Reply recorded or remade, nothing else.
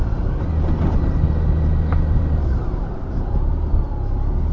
recorded